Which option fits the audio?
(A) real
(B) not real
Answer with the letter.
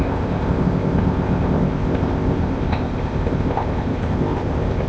B